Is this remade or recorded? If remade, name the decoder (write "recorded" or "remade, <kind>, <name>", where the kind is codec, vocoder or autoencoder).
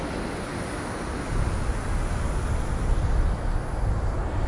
recorded